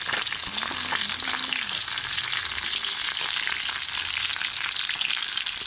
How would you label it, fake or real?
real